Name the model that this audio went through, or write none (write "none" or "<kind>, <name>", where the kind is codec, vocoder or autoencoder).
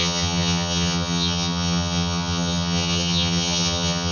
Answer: vocoder, HiFi-GAN